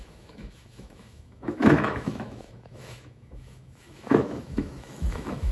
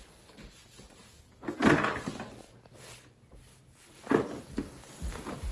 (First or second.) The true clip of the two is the second